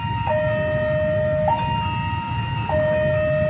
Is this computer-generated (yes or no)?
no